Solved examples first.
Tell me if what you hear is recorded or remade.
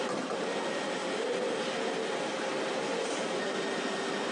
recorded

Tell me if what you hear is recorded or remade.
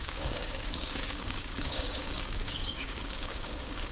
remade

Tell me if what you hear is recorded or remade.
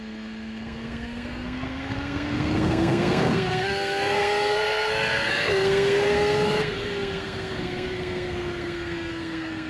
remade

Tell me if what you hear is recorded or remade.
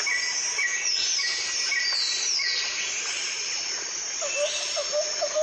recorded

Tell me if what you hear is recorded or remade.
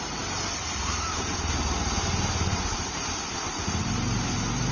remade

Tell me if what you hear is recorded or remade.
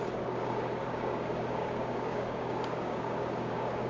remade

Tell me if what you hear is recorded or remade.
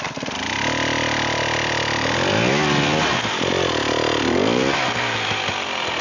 recorded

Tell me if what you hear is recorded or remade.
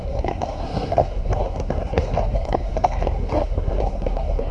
remade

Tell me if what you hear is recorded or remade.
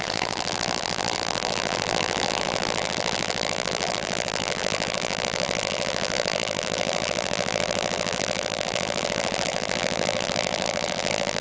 remade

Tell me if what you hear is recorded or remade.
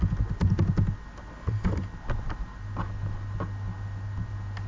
recorded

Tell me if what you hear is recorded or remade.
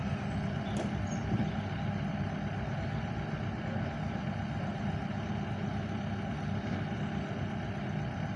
recorded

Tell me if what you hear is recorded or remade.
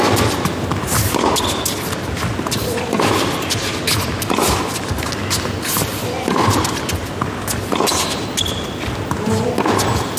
recorded